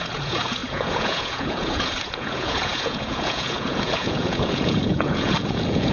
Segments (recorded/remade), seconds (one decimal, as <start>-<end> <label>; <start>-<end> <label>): 0.0-5.9 remade

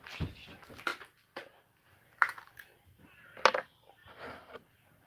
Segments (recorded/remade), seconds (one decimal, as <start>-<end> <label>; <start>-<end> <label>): 0.0-0.9 recorded; 0.9-1.9 remade; 1.9-4.0 recorded; 4.0-5.1 remade

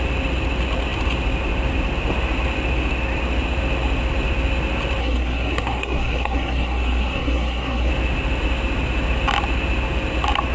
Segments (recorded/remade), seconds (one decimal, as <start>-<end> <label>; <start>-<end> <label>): 0.0-5.0 recorded; 5.0-7.9 remade; 7.9-10.5 recorded

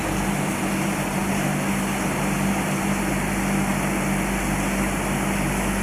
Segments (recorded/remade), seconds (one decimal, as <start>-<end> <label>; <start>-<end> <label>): 0.0-5.8 recorded

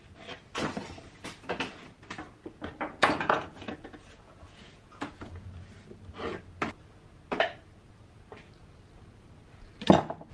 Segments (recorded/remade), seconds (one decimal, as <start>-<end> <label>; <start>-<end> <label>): 0.0-3.0 recorded; 3.0-5.5 remade; 5.5-10.3 recorded

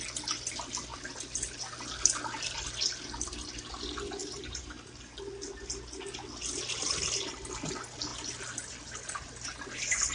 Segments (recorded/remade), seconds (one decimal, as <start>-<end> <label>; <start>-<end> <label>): 0.0-4.2 recorded; 4.2-5.2 remade; 5.2-10.1 recorded

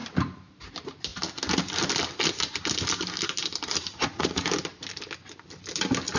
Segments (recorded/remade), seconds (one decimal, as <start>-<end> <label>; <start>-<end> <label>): 0.0-3.9 recorded; 3.9-4.5 remade; 4.5-6.2 recorded